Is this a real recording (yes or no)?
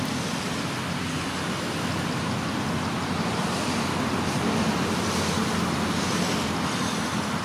yes